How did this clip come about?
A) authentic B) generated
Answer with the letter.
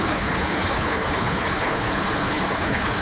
B